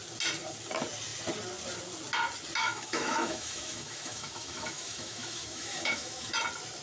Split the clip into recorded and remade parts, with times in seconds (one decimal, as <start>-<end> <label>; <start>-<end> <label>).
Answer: 0.0-2.6 recorded; 2.6-6.3 remade; 6.3-6.8 recorded